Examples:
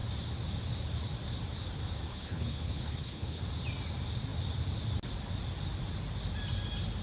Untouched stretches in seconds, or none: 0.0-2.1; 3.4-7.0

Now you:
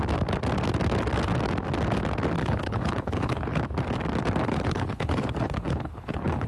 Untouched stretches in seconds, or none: 0.0-2.4; 3.6-4.4

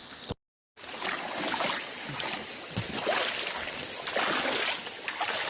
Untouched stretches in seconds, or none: 0.0-5.5